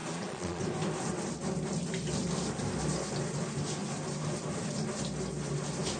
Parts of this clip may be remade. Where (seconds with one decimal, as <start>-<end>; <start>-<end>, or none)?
0.0-0.6